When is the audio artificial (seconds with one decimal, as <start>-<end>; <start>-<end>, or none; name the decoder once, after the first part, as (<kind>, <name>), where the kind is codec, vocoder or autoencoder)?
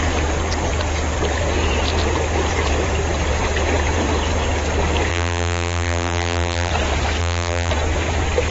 5.1-6.7 (vocoder, BigVGAN v2); 7.2-7.7